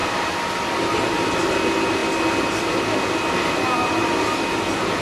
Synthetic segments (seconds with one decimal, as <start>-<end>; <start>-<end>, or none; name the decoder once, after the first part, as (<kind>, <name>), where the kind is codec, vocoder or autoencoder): none